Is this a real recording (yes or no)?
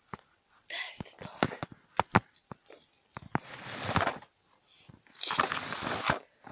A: yes